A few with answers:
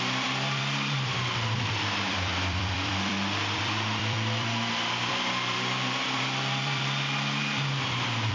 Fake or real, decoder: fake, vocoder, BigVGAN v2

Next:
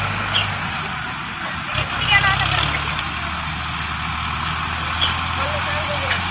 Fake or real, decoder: real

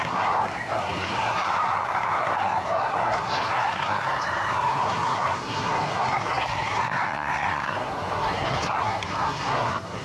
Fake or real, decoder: fake, codec, SNAC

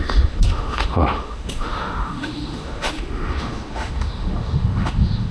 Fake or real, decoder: fake, autoencoder, DAC-VAE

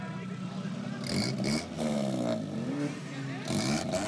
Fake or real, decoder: real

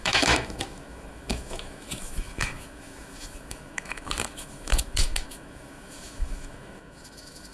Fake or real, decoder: fake, autoencoder, DAC-VAE